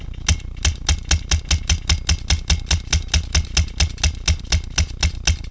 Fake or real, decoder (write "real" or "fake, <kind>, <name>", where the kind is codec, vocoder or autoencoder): real